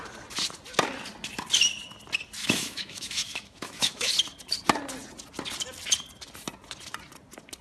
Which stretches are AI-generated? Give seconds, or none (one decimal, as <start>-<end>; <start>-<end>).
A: 2.4-4.1